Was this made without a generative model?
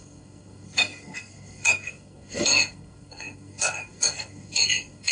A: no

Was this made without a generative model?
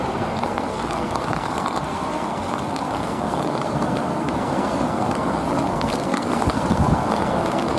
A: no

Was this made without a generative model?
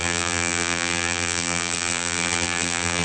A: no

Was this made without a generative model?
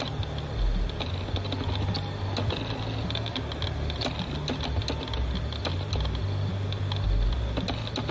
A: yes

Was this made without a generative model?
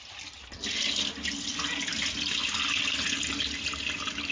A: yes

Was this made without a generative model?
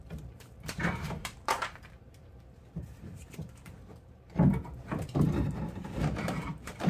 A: no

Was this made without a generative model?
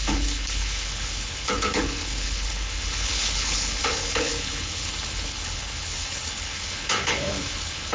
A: no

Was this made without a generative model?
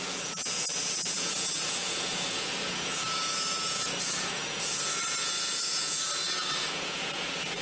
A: no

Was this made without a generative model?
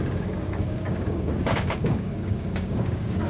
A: no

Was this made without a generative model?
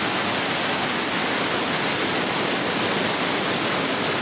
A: yes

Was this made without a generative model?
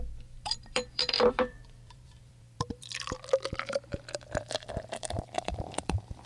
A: no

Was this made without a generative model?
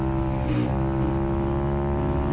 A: yes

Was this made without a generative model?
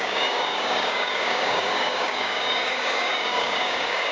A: no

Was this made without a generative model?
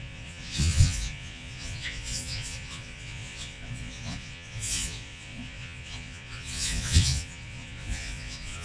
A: no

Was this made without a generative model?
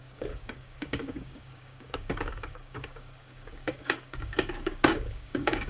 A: no